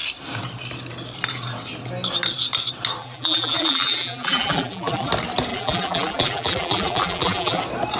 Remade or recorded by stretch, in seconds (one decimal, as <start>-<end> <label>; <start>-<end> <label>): 0.0-3.0 recorded; 3.0-5.1 remade; 5.1-5.5 recorded; 5.5-7.6 remade; 7.6-8.0 recorded